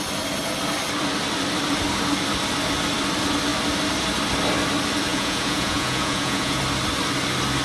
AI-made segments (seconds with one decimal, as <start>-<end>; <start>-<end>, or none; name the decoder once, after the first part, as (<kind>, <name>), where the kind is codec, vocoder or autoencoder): 5.1-6.6 (vocoder, Vocos)

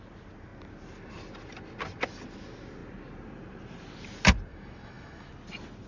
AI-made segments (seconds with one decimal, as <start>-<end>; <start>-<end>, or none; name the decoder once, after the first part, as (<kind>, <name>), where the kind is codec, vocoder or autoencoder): 4.5-5.3 (autoencoder, DAC-VAE)